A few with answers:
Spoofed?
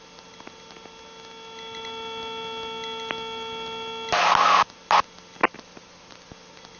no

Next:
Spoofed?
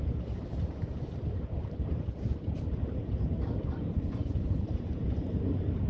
yes